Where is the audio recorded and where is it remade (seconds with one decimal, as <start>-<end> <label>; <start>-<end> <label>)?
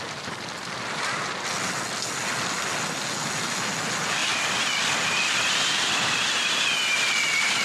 0.0-7.6 recorded